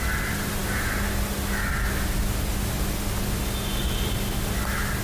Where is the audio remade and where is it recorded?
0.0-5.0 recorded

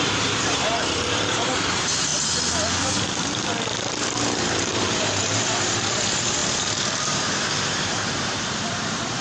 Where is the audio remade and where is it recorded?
0.0-2.1 remade; 2.1-4.0 recorded; 4.0-9.2 remade

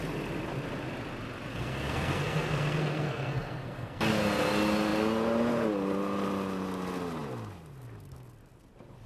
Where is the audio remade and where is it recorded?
0.0-1.5 recorded; 1.5-4.1 remade; 4.1-9.1 recorded

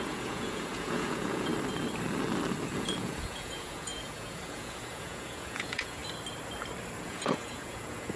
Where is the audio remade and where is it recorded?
0.0-1.5 remade; 1.5-2.7 recorded; 2.7-6.0 remade; 6.0-7.0 recorded; 7.0-8.2 remade

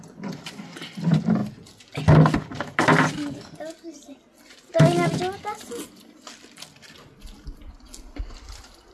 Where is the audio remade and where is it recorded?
0.0-8.9 recorded